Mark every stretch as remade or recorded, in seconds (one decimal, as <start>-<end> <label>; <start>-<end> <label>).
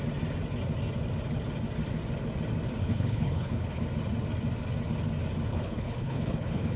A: 0.0-2.8 recorded; 2.8-3.8 remade; 3.8-5.5 recorded; 5.5-6.8 remade